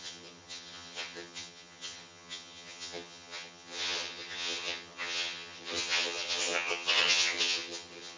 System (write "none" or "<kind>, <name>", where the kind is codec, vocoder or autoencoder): vocoder, HiFi-GAN